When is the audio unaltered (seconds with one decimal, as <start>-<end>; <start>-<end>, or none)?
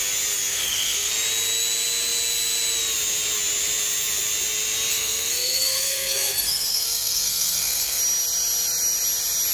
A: 0.0-0.5; 1.1-4.9; 8.0-9.5